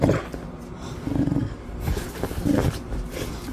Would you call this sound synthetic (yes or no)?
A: no